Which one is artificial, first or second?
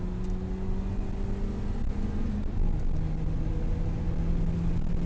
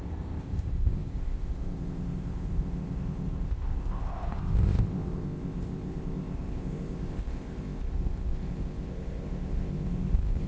second